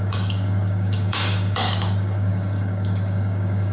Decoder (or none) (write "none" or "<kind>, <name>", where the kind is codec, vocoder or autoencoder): codec, DAC